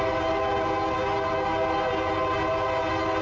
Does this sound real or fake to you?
real